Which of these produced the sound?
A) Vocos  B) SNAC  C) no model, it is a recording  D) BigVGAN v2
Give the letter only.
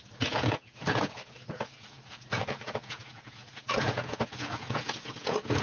A